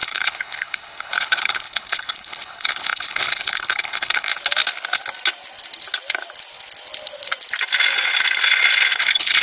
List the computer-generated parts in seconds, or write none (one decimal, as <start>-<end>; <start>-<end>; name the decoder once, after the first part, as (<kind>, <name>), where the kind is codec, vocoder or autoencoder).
0.0-4.3 (codec, HILCodec); 9.0-9.4